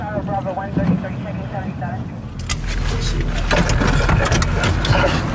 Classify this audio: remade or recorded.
recorded